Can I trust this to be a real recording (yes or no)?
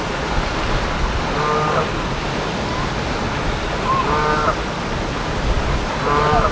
yes